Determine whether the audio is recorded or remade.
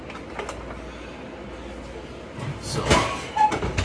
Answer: recorded